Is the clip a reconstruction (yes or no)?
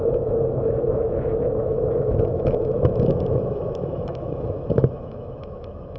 yes